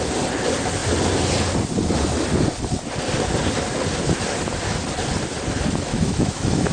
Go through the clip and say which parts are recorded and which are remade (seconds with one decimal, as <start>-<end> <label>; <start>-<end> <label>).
0.0-5.9 recorded; 5.9-6.7 remade